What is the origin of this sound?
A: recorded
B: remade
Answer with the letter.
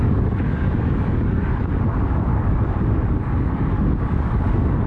B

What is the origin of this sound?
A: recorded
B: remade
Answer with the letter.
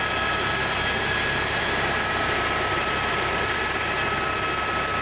A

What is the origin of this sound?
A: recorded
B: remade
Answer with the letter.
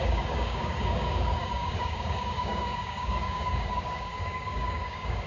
B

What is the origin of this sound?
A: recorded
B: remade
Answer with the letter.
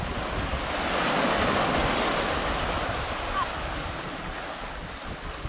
A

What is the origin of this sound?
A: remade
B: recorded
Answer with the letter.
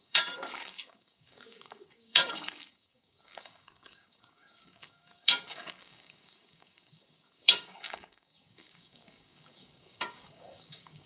A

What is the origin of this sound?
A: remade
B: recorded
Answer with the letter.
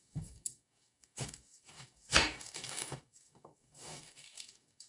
A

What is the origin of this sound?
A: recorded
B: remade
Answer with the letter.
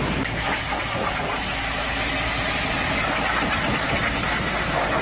A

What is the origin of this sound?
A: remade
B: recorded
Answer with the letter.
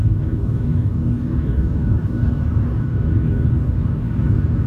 A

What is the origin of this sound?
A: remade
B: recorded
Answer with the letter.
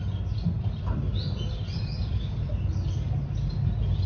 B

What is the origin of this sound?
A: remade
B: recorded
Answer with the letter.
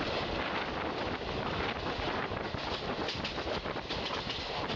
B